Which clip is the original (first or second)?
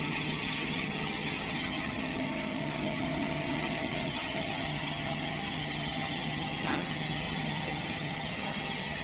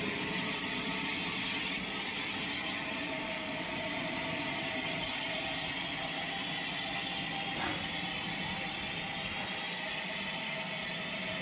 second